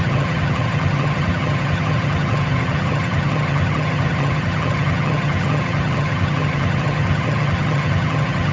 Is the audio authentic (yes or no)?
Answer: no